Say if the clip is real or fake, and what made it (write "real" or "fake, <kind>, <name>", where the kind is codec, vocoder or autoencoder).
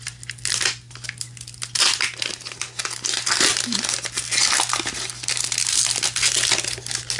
real